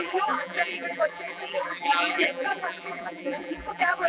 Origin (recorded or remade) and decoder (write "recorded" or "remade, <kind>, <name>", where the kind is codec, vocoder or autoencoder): remade, vocoder, BigVGAN v2